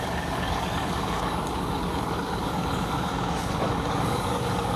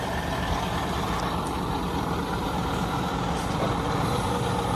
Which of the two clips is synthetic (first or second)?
first